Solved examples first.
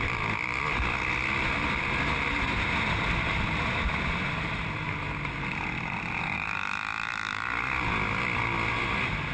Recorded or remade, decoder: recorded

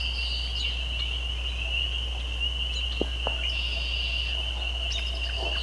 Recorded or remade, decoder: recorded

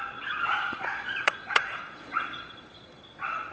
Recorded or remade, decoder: remade, vocoder, Vocos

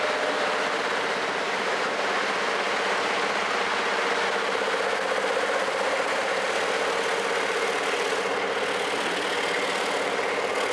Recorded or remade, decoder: recorded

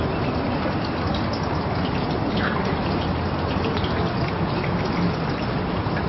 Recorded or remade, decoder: recorded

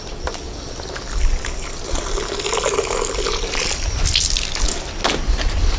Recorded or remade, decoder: recorded